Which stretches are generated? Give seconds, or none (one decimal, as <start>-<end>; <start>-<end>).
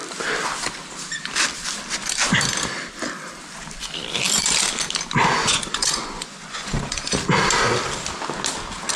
5.4-7.0